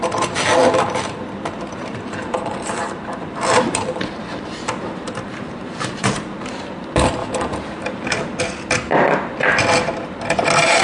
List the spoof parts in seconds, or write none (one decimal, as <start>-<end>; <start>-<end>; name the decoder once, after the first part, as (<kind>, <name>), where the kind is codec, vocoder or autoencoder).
0.6-1.2 (vocoder, BigVGAN v2); 1.7-6.6; 7.2-8.4